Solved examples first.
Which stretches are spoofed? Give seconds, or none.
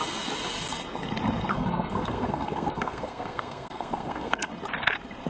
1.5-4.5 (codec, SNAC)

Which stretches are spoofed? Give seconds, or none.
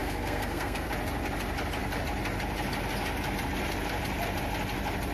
0.0-0.9 (codec, SNAC)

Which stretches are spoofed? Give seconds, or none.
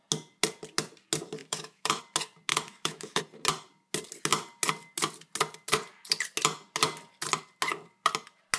1.4-2.0 (autoencoder, DAC-VAE); 2.5-3.2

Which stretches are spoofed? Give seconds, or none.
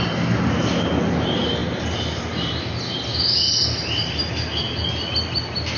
none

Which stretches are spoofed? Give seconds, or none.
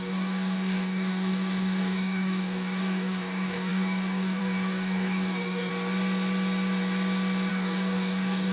0.0-5.7 (codec, DAC); 7.5-8.5